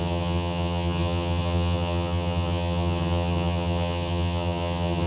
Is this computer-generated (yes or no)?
yes